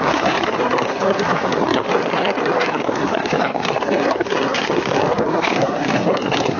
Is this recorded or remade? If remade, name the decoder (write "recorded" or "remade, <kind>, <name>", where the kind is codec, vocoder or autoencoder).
remade, codec, SNAC